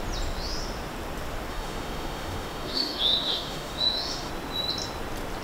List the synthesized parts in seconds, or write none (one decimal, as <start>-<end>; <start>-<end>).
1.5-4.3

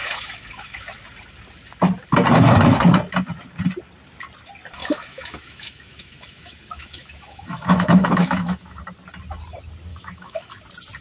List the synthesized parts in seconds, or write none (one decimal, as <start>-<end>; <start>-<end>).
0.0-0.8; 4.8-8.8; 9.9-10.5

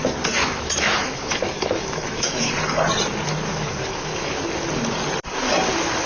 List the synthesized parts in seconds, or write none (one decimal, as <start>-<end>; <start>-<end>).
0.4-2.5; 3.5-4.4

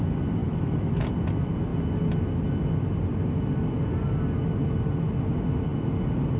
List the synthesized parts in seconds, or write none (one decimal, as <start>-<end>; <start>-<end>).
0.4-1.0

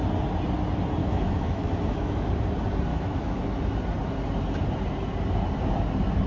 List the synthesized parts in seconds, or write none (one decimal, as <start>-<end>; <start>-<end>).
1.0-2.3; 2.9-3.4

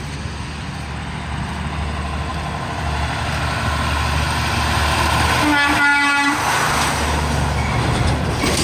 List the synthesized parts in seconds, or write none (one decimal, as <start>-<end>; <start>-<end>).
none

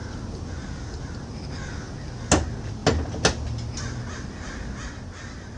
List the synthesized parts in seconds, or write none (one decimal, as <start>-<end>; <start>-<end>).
none